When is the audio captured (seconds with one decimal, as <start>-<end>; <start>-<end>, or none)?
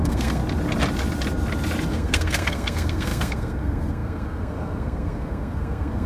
0.4-1.9